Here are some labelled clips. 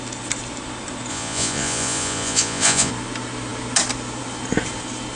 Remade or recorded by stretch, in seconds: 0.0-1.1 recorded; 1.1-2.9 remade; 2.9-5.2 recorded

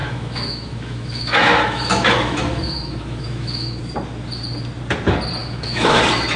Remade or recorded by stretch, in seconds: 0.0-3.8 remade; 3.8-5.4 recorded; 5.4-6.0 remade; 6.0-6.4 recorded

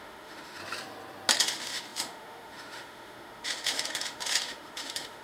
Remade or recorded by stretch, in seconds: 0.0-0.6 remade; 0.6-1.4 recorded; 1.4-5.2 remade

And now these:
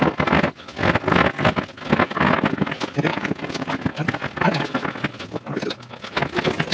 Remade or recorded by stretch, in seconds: 0.0-3.1 recorded; 3.1-3.7 remade; 3.7-6.7 recorded

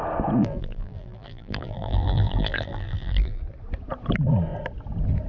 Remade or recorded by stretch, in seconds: 0.0-0.4 recorded; 0.4-3.4 remade; 3.4-5.3 recorded

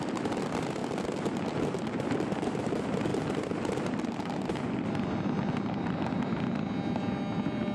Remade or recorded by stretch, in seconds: 0.0-7.7 recorded

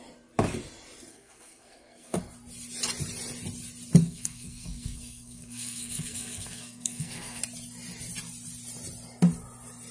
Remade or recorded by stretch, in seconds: 0.0-1.1 recorded; 1.1-2.2 remade; 2.2-4.0 recorded; 4.0-7.4 remade; 7.4-9.9 recorded